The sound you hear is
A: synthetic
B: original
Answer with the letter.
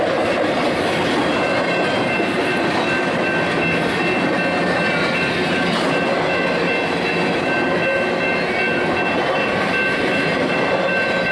B